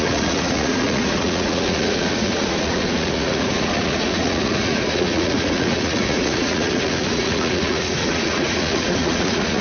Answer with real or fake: fake